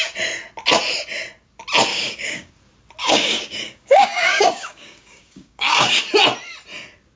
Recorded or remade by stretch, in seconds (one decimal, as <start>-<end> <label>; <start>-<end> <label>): 0.0-1.9 recorded; 1.9-2.5 remade; 2.5-3.0 recorded; 3.0-6.0 remade; 6.0-7.2 recorded